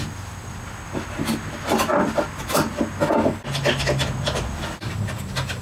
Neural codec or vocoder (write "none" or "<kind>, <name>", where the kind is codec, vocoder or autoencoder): none